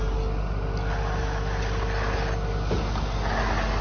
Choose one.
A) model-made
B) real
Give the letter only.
B